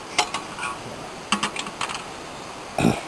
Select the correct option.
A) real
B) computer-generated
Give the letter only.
A